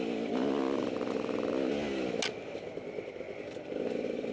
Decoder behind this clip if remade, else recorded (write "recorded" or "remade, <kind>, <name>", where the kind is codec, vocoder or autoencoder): recorded